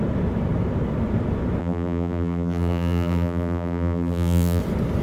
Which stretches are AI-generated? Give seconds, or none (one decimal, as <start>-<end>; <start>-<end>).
1.6-4.6